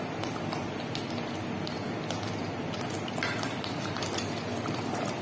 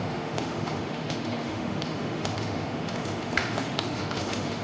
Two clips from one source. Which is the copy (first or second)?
second